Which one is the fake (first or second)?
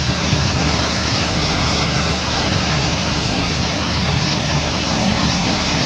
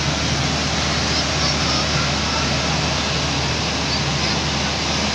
first